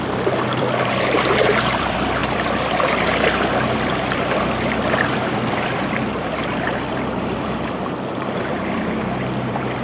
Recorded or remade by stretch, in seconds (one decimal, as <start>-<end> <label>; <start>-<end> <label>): 0.0-2.2 remade; 2.2-4.4 recorded; 4.4-9.8 remade